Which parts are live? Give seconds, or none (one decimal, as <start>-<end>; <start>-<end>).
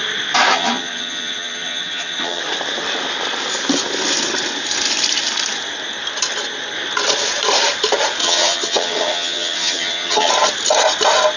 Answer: 0.0-0.5; 2.4-8.2; 10.3-11.4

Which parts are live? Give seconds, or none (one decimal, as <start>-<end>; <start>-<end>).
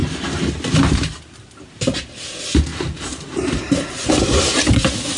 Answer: 1.2-2.7; 4.1-5.2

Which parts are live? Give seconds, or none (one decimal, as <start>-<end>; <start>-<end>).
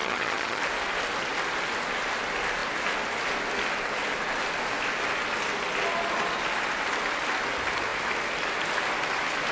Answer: 0.6-9.5